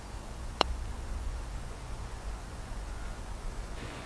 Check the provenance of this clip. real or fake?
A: fake